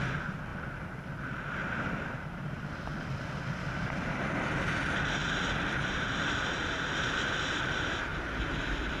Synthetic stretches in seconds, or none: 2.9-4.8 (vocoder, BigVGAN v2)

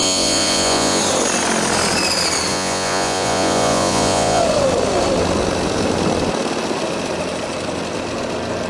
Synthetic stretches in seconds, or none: 0.0-1.0 (vocoder, Vocos); 2.5-4.4

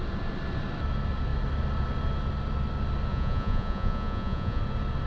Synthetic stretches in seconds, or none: 3.1-4.6 (vocoder, Vocos)

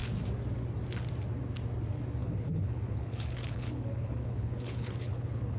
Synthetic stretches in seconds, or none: 2.2-5.6 (codec, HILCodec)

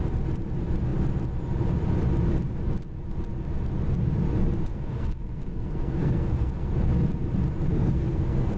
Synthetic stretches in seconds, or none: 4.7-6.7 (codec, SNAC); 7.7-8.6

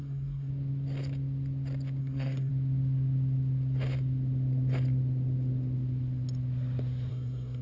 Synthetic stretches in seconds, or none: 0.0-0.5 (codec, SNAC); 2.0-2.5; 7.1-7.6

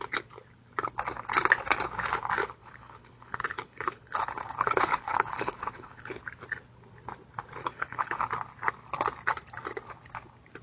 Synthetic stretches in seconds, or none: 2.6-6.2 (codec, HILCodec); 7.6-8.3